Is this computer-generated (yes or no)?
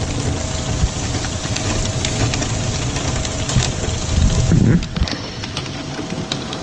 no